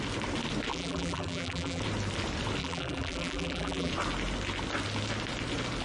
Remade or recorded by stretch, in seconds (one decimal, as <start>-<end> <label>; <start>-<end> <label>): 0.0-0.7 recorded; 0.7-1.8 remade; 1.8-2.6 recorded; 2.6-3.9 remade; 3.9-5.8 recorded